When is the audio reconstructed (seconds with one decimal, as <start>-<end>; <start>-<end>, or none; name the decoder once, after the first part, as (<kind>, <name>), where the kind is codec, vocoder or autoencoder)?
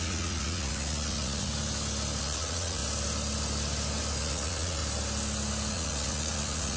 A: 0.0-1.5 (vocoder, Vocos); 2.2-2.8; 4.2-4.8; 5.7-6.8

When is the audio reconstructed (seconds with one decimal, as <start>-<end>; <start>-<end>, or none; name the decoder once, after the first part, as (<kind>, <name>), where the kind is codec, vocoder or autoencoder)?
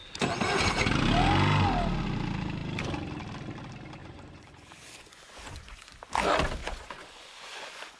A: 4.0-5.9 (vocoder, Vocos); 6.6-8.0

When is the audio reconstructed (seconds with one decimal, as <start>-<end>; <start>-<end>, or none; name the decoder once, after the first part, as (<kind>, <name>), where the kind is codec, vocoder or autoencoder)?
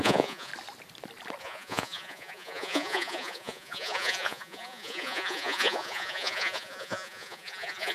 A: 0.0-0.5 (vocoder, Vocos); 1.4-7.9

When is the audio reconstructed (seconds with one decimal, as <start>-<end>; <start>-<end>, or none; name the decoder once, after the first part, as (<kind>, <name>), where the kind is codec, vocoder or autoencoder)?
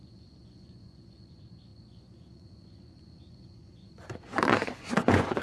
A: 0.0-5.4 (vocoder, Vocos)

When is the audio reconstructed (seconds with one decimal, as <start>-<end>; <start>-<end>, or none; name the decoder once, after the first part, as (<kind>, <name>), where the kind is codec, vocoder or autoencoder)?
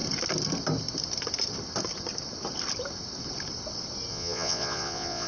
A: 4.1-5.3 (vocoder, Vocos)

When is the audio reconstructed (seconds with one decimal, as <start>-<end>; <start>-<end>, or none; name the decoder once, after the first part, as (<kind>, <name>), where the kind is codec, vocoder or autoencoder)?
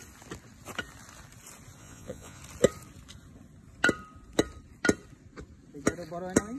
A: 1.8-2.4 (vocoder, Vocos)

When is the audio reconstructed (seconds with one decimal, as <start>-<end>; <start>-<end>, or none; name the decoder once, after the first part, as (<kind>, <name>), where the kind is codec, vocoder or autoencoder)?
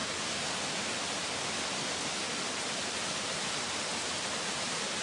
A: none